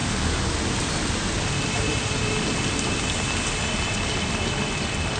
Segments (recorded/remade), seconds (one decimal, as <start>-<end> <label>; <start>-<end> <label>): 0.0-0.5 remade; 0.5-5.2 recorded